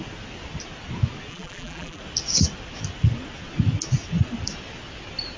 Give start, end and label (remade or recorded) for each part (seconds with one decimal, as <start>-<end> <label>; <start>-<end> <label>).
0.0-1.3 recorded; 1.3-2.0 remade; 2.0-5.4 recorded